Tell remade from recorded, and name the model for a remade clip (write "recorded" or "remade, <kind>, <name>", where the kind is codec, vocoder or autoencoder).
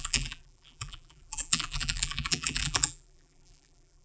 remade, vocoder, BigVGAN v2